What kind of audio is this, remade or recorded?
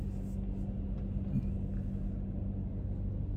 recorded